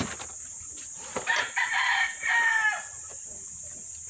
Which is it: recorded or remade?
recorded